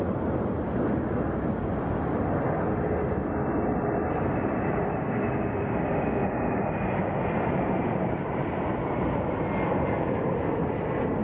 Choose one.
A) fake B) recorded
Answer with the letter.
B